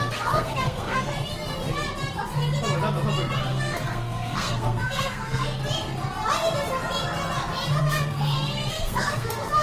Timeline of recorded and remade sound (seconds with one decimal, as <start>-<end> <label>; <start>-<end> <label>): 0.0-1.1 remade; 1.1-3.4 recorded; 3.4-5.6 remade; 5.6-7.8 recorded; 7.8-9.6 remade

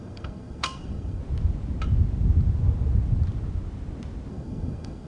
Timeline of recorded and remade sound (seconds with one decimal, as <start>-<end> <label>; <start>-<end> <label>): 0.0-1.2 remade; 1.2-4.3 recorded; 4.3-5.1 remade

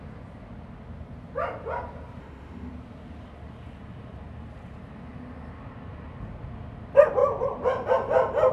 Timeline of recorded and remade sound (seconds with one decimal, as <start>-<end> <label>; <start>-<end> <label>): 0.0-2.2 recorded; 2.2-2.7 remade; 2.7-8.5 recorded

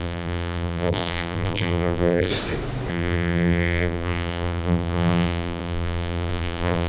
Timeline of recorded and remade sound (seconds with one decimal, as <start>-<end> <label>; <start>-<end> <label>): 0.0-2.3 remade; 2.3-2.9 recorded; 2.9-6.9 remade

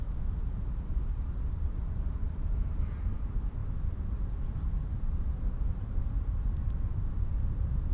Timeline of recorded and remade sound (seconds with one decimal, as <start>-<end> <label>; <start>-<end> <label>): 0.0-7.9 remade

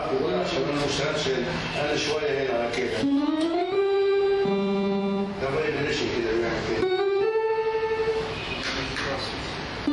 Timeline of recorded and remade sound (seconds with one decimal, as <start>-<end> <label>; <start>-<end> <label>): 0.0-2.8 recorded; 2.8-4.2 remade; 4.2-6.4 recorded; 6.4-7.5 remade; 7.5-8.1 recorded; 8.1-9.0 remade; 9.0-9.9 recorded

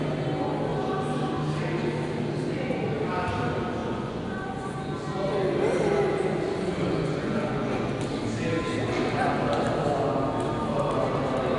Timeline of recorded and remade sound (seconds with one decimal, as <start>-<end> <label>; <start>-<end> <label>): 0.0-3.8 recorded; 3.8-4.8 remade; 4.8-6.8 recorded; 6.8-7.9 remade; 7.9-11.6 recorded

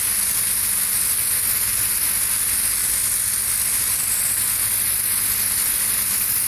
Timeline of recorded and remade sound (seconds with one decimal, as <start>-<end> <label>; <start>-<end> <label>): 0.0-6.5 recorded